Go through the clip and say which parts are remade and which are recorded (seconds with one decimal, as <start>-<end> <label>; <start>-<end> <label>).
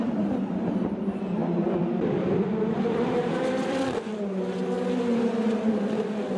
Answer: 0.0-4.1 remade; 4.1-5.7 recorded; 5.7-6.4 remade